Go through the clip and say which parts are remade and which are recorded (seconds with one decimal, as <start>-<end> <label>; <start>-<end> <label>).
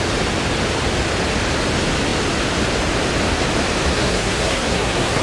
0.0-3.9 recorded; 3.9-5.2 remade